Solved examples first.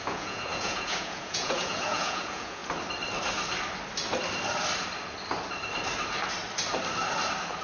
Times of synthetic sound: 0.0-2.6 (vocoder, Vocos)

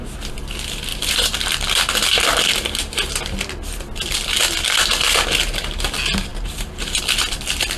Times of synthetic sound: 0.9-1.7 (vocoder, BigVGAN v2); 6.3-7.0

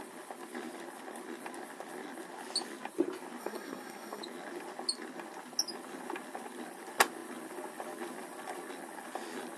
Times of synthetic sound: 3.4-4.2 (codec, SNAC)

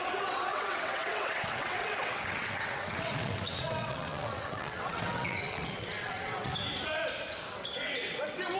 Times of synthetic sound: 0.0-6.5 (vocoder, WaveNeXt); 7.5-8.6